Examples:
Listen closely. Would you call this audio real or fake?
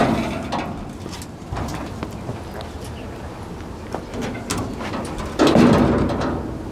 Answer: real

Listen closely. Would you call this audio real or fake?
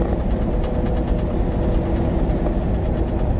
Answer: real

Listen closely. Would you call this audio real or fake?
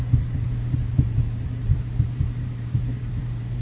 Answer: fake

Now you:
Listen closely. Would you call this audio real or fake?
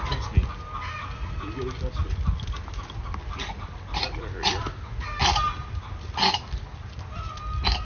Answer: real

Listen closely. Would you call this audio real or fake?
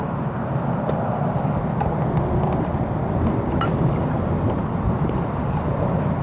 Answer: fake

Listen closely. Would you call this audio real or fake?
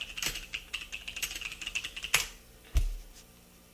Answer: real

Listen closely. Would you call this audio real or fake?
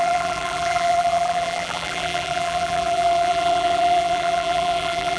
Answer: fake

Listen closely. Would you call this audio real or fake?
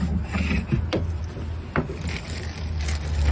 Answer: real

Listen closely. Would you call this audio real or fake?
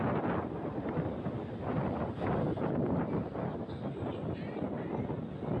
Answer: real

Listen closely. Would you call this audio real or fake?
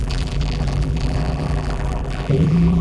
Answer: fake